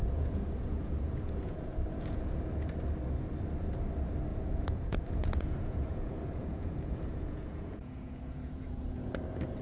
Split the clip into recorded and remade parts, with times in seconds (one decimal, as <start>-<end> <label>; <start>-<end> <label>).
0.0-2.4 remade; 2.4-4.3 recorded; 4.3-9.1 remade; 9.1-9.6 recorded